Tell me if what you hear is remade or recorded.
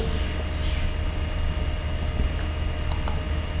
recorded